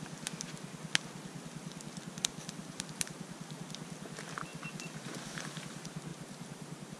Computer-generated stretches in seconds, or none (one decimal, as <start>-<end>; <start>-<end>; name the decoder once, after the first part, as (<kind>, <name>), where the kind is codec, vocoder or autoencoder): 2.6-3.6 (vocoder, BigVGAN v2); 4.5-5.6; 6.1-7.0